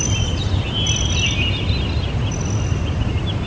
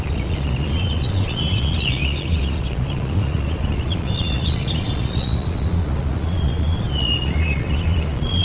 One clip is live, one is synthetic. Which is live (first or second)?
first